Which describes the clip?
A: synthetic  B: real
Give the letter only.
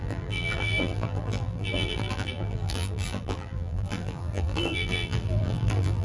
A